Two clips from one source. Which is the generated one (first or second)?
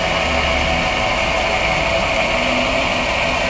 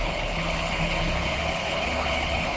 second